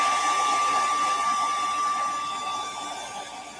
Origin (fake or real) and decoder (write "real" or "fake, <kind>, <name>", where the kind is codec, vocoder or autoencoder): real